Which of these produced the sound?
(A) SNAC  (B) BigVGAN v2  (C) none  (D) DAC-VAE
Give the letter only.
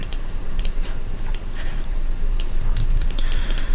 B